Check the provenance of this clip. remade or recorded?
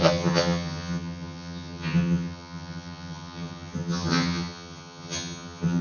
remade